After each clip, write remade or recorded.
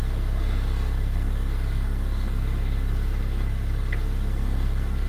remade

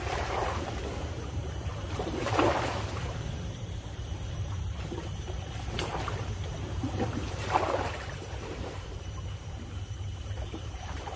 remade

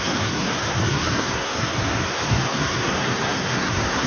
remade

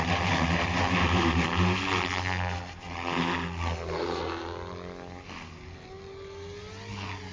recorded